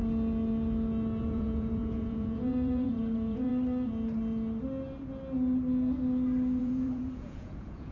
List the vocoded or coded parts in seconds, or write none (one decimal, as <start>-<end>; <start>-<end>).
1.2-3.5; 6.6-7.9